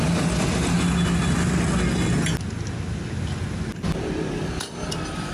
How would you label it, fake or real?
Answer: real